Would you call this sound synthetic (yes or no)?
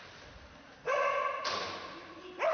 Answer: no